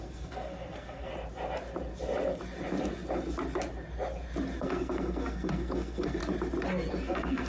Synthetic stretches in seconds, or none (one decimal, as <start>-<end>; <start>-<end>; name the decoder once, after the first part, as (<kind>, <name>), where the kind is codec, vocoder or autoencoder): 0.0-1.1 (codec, SNAC); 4.6-6.2; 6.9-7.5